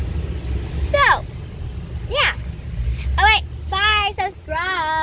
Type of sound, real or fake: real